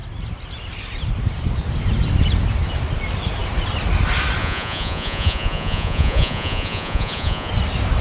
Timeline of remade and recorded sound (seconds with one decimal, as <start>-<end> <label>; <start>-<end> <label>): 0.0-4.4 recorded; 4.4-7.5 remade; 7.5-8.0 recorded